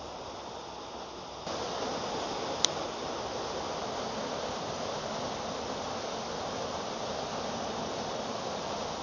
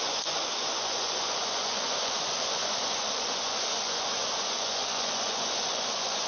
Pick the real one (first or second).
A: first